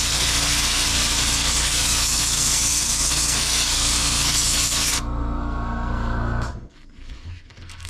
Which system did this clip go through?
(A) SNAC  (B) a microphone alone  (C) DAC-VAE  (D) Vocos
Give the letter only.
A